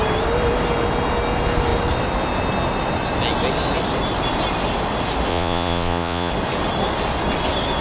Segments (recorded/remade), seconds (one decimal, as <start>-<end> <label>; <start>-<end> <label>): 0.0-5.3 recorded; 5.3-6.3 remade; 6.3-7.8 recorded